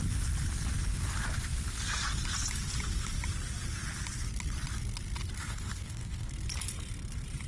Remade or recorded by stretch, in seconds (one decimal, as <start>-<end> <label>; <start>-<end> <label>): 0.0-5.4 recorded; 5.4-6.3 remade; 6.3-7.5 recorded